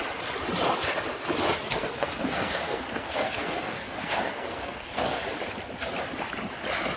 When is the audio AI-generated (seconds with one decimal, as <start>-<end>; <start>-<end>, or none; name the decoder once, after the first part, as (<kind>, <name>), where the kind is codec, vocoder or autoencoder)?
1.7-5.2 (codec, SNAC)